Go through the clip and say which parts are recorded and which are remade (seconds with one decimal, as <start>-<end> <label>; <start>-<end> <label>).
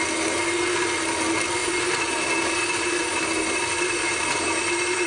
0.0-1.6 recorded; 1.6-5.1 remade